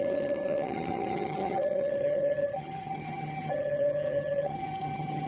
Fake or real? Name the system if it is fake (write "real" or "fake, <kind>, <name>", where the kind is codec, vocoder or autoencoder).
fake, vocoder, HiFi-GAN